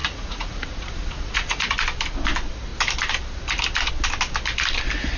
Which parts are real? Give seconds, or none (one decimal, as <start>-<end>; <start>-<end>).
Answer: 1.7-5.2